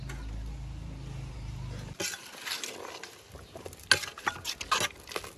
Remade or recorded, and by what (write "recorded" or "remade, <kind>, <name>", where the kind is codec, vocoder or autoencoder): recorded